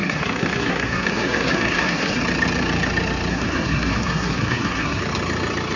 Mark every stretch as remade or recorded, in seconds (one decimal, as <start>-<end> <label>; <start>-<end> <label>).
0.0-2.2 remade; 2.2-3.3 recorded; 3.3-5.0 remade; 5.0-5.8 recorded